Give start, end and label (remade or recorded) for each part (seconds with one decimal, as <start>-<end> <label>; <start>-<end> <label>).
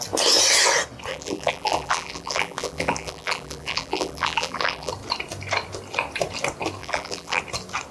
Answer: 0.0-1.1 recorded; 1.1-4.9 remade; 4.9-6.8 recorded; 6.8-7.4 remade; 7.4-7.9 recorded